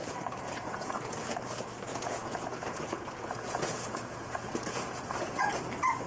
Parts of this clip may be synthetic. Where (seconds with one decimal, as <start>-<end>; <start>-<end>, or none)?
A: 0.0-1.1; 1.9-5.6